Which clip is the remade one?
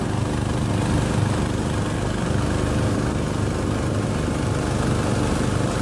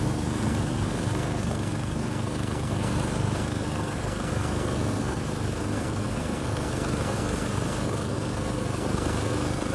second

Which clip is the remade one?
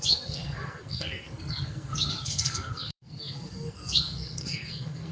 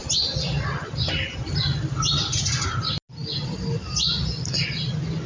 first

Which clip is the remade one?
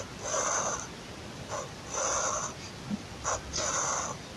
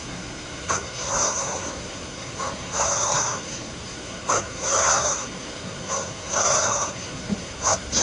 second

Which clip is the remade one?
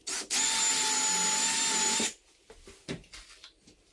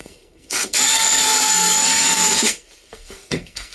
second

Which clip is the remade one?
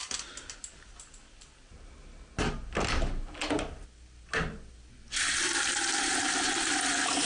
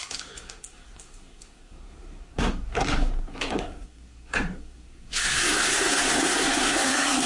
second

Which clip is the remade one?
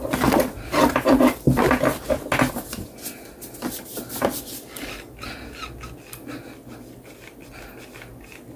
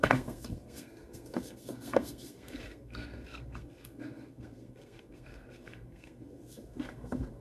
second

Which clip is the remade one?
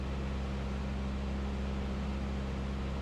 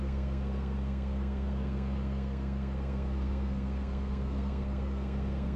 second